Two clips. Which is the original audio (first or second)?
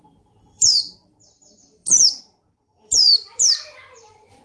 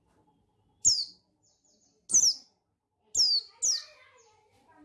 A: second